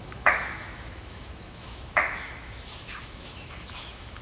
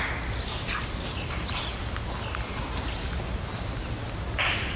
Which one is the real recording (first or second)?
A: second